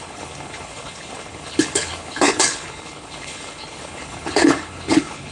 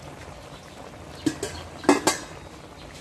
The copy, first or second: first